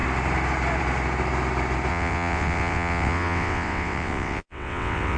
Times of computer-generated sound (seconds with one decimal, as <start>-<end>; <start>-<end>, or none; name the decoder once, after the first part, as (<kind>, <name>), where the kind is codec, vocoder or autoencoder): 1.9-5.2 (vocoder, WaveNeXt)